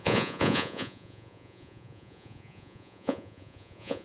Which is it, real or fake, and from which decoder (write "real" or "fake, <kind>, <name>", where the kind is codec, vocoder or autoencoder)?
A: fake, vocoder, Vocos